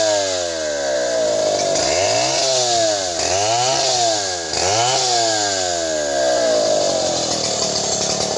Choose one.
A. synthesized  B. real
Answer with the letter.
B